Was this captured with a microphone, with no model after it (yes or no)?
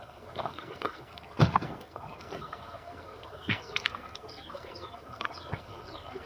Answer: no